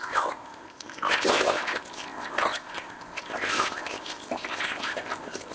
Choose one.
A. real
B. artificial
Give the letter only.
B